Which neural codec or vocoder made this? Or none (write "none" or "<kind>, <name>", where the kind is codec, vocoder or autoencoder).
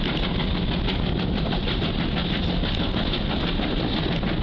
none